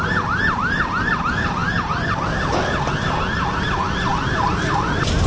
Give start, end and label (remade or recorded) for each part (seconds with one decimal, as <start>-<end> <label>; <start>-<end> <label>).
0.0-5.3 recorded